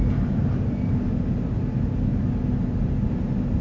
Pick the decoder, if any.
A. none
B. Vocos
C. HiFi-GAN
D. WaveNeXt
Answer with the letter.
A